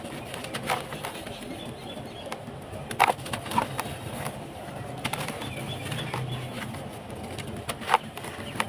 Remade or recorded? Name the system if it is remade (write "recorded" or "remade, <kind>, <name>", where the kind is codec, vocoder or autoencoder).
recorded